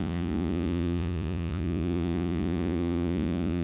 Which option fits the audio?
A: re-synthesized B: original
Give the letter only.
A